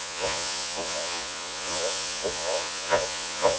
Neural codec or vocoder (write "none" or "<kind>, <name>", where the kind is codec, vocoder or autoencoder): vocoder, Vocos